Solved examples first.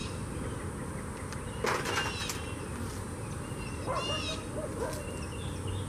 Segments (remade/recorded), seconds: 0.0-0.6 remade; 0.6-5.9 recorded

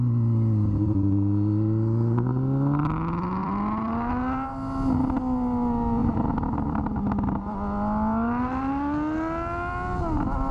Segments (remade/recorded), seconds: 0.0-3.4 recorded; 3.4-4.1 remade; 4.1-6.0 recorded; 6.0-7.0 remade; 7.0-10.5 recorded

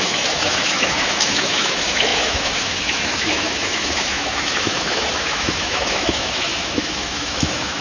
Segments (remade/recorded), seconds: 0.0-7.8 remade

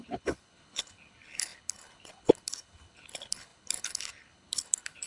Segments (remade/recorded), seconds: 0.0-5.1 remade

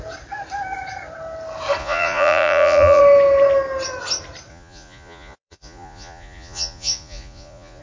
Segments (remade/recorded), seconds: 0.0-1.8 recorded; 1.8-3.0 remade; 3.0-4.5 recorded; 4.5-7.8 remade

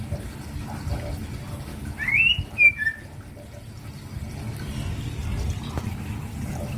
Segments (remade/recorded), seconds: 0.0-6.8 recorded

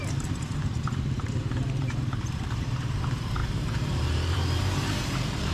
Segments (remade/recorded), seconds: 0.0-5.5 remade

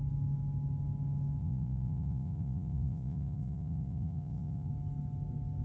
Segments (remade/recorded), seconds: 0.0-1.4 recorded; 1.4-4.7 remade; 4.7-5.6 recorded